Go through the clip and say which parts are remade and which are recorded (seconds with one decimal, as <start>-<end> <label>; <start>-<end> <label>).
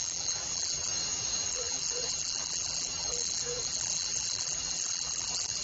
0.0-0.9 remade; 0.9-1.5 recorded; 1.5-5.6 remade